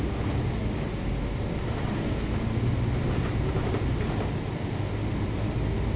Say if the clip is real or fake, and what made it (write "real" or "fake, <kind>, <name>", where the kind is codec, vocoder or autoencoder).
real